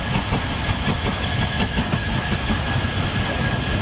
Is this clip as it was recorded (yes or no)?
yes